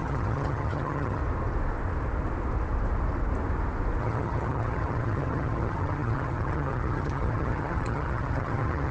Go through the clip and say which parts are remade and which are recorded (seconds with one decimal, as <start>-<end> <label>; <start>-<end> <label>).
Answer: 0.0-1.2 remade; 1.2-4.0 recorded; 4.0-8.9 remade